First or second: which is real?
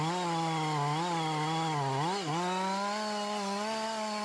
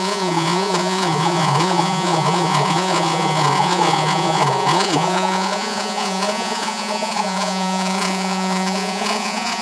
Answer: first